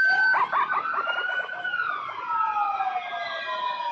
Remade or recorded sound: recorded